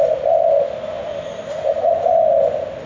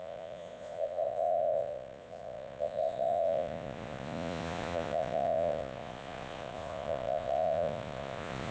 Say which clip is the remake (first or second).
second